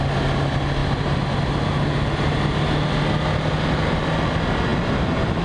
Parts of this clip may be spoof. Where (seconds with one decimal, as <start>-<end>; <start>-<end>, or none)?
none